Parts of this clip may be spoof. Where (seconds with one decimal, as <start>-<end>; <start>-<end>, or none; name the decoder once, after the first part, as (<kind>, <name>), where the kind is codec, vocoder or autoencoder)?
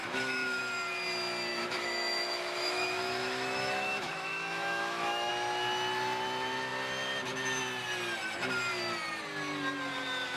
0.0-0.6 (autoencoder, DAC-VAE); 1.5-5.3